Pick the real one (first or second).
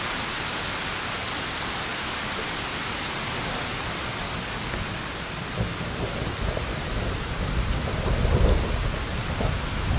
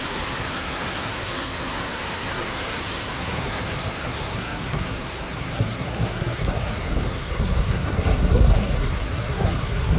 first